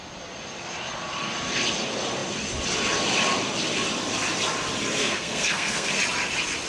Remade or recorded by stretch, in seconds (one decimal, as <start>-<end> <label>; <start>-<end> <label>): 0.0-5.0 recorded; 5.0-6.0 remade; 6.0-6.7 recorded